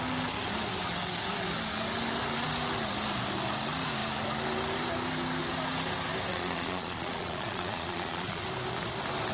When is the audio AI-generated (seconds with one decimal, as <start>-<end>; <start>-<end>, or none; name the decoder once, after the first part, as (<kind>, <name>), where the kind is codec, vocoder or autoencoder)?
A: 6.3-8.4 (vocoder, Vocos)